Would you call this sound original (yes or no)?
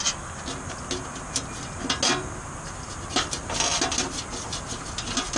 yes